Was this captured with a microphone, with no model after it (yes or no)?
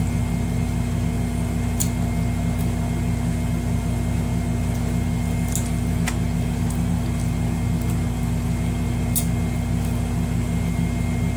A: yes